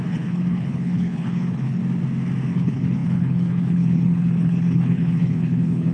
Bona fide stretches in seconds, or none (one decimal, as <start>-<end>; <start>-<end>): 1.8-2.5